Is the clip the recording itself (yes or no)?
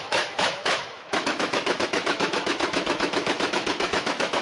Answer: no